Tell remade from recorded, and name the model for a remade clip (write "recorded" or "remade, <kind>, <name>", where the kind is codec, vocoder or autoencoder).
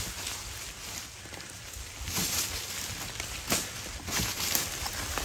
recorded